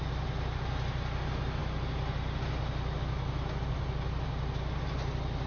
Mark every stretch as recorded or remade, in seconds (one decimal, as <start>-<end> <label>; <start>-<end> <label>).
0.0-5.5 recorded